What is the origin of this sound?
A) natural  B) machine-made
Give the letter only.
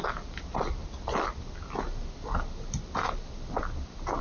A